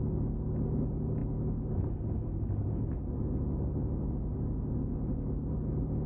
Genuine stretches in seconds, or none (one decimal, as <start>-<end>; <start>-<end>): 0.0-6.1